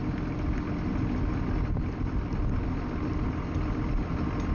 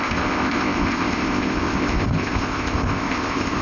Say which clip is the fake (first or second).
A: second